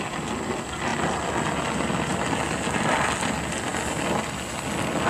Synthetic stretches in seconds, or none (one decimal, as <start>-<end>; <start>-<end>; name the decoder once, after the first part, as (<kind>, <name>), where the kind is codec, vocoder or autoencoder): none